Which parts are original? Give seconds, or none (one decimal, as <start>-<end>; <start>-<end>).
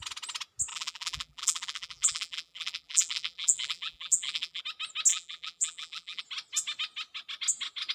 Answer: 0.0-0.7; 4.6-5.1; 6.2-7.9